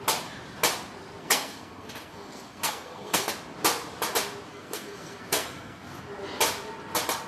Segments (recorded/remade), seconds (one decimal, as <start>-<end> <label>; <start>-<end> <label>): 0.0-1.2 recorded; 1.2-3.3 remade; 3.3-4.5 recorded; 4.5-6.0 remade; 6.0-7.3 recorded